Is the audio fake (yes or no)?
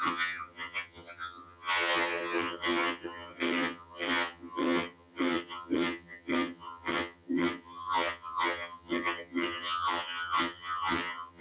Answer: yes